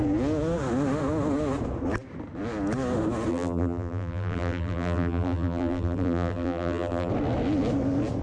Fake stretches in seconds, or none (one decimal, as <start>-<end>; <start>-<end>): 3.3-7.1